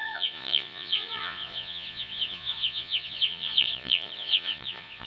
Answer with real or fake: fake